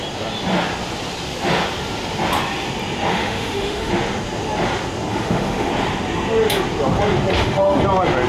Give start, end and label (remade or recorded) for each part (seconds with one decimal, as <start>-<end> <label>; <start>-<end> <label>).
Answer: 0.0-3.1 recorded; 3.1-3.9 remade; 3.9-5.1 recorded; 5.1-5.7 remade; 5.7-7.3 recorded; 7.3-7.8 remade; 7.8-8.3 recorded